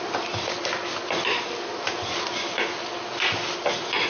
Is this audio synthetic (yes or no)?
no